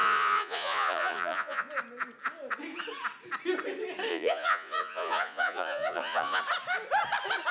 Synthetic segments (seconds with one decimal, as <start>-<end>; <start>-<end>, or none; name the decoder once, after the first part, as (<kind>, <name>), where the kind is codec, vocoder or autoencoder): 0.0-1.7 (vocoder, Vocos); 4.1-6.4